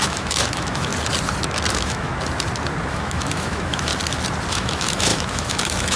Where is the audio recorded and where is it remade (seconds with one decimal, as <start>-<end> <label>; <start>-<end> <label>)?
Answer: 0.0-0.9 remade; 0.9-1.7 recorded; 1.7-2.1 remade; 2.1-2.9 recorded; 2.9-3.9 remade; 3.9-4.5 recorded; 4.5-6.0 remade